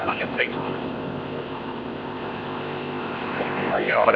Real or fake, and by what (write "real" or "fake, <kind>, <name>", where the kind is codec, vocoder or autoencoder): fake, codec, ZipCodec